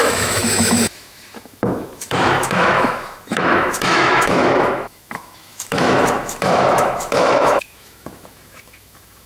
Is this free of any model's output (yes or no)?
no